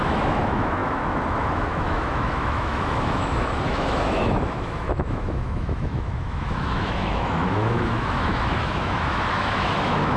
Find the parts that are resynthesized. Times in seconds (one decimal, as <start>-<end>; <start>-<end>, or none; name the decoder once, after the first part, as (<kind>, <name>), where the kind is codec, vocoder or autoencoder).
0.0-10.2 (autoencoder, DAC-VAE)